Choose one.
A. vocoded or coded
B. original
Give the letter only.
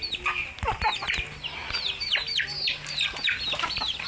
B